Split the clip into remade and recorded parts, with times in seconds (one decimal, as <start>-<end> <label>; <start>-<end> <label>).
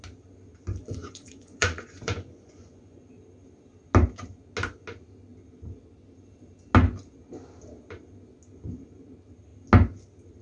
0.0-1.0 recorded; 1.0-3.0 remade; 3.0-10.4 recorded